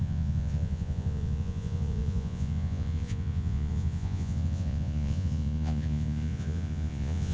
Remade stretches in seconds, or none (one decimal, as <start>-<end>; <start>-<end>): 0.0-7.3